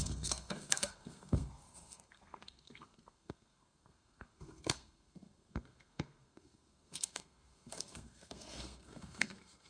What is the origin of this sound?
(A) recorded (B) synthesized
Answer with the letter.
B